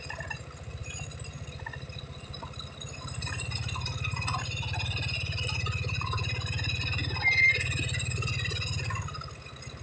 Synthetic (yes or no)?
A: no